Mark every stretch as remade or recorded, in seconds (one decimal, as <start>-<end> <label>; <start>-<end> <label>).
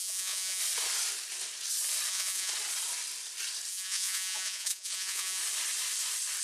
0.0-0.6 remade; 0.6-2.1 recorded; 2.1-2.5 remade; 2.5-3.7 recorded; 3.7-5.4 remade; 5.4-6.4 recorded